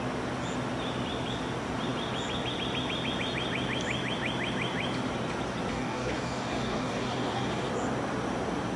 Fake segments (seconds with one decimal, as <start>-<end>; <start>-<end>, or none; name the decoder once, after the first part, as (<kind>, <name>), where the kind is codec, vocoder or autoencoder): 5.7-7.7 (codec, DAC)